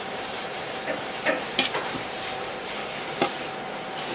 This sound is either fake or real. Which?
fake